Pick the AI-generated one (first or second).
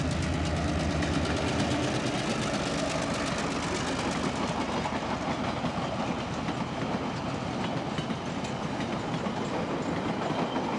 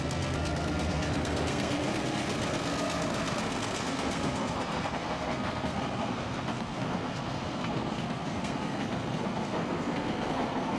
second